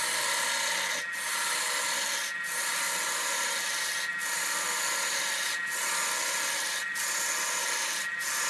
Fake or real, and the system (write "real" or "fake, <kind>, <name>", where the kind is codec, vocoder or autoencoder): real